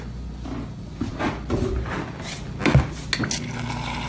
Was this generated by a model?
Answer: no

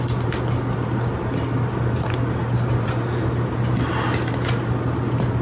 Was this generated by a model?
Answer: no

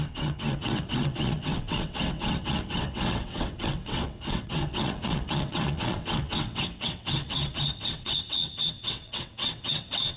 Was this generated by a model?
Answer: yes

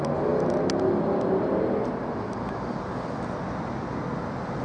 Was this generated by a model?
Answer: no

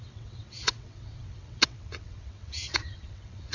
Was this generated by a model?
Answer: yes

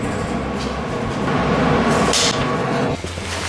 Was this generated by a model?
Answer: no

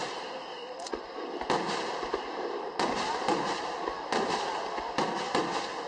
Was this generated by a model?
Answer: no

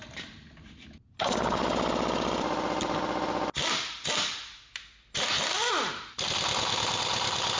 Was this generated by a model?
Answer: no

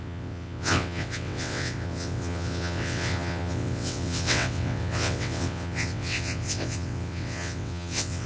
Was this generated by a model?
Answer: yes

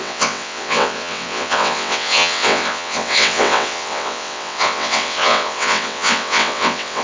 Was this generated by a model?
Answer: yes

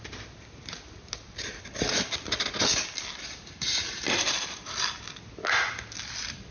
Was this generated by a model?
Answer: no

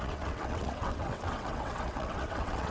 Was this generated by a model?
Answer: yes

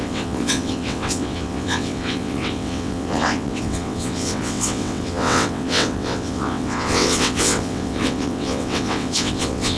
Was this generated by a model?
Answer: yes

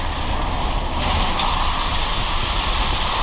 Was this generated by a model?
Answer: no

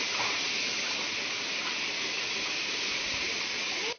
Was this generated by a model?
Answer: no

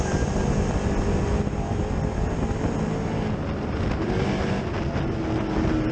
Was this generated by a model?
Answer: no